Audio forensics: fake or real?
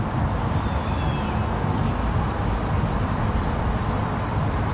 real